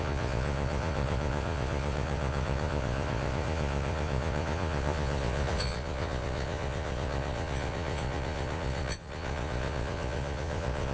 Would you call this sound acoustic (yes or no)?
no